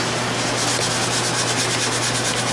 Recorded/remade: recorded